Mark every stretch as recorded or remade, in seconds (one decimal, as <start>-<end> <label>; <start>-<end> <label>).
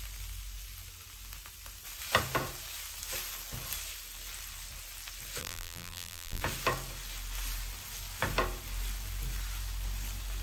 0.0-5.4 recorded; 5.4-6.4 remade; 6.4-10.4 recorded